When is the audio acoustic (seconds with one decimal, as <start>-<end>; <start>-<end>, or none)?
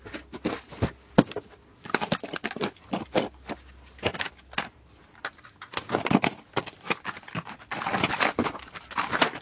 0.0-9.4